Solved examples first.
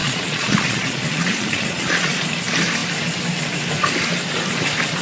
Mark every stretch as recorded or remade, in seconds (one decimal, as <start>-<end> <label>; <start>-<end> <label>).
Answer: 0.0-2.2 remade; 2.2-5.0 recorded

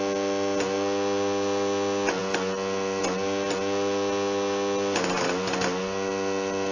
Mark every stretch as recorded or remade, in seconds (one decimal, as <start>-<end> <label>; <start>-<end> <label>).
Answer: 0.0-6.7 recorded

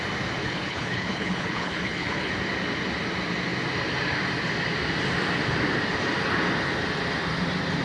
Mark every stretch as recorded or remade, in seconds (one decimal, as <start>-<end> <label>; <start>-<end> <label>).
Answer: 0.0-0.4 recorded; 0.4-2.3 remade; 2.3-7.8 recorded

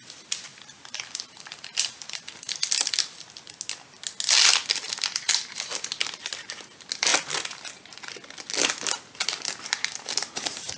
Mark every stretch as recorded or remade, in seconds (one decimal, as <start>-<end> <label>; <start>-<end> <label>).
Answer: 0.0-0.5 recorded; 0.5-3.3 remade; 3.3-4.6 recorded; 4.6-5.5 remade; 5.5-10.8 recorded

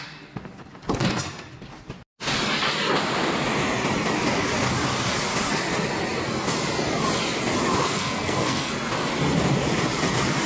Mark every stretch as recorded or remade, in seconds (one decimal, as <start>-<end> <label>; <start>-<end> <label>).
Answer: 0.0-7.8 recorded; 7.8-8.7 remade; 8.7-10.5 recorded